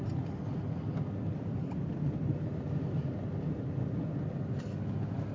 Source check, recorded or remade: recorded